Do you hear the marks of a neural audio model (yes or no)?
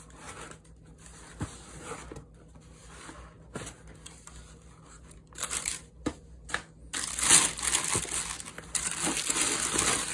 no